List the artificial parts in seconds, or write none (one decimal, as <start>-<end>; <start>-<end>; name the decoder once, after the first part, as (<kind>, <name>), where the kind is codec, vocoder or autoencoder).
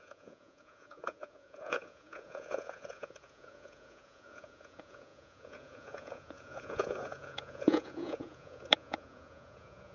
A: 0.0-9.9 (vocoder, Vocos)